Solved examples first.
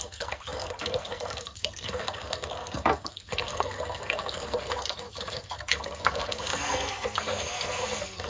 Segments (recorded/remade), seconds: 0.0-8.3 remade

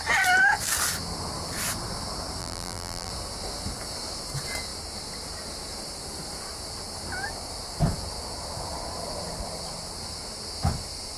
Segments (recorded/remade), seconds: 0.0-2.4 recorded; 2.4-3.1 remade; 3.1-11.2 recorded

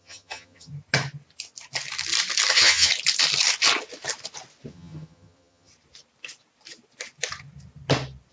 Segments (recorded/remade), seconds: 0.0-0.7 remade; 0.7-2.5 recorded; 2.5-2.9 remade; 2.9-4.7 recorded; 4.7-5.7 remade; 5.7-8.3 recorded

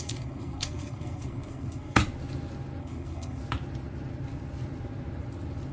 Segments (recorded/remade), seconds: 0.0-2.0 remade; 2.0-2.8 recorded; 2.8-3.4 remade; 3.4-5.7 recorded

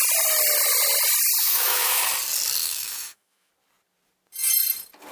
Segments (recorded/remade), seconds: 0.0-1.4 recorded; 1.4-2.0 remade; 2.0-2.6 recorded; 2.6-3.5 remade; 3.5-5.1 recorded

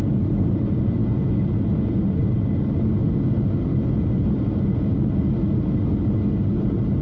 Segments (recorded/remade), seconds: 0.0-7.0 recorded